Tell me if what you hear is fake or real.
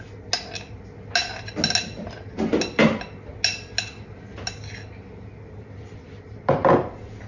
real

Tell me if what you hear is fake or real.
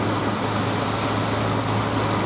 real